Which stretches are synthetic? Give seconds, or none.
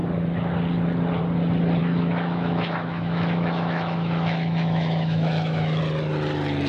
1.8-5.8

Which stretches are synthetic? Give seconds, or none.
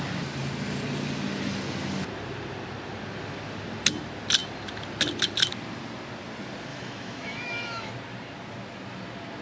6.7-7.9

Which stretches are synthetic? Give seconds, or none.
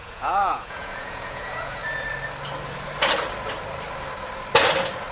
0.0-1.8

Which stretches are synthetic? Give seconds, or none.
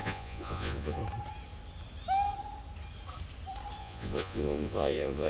0.0-1.0; 3.8-5.3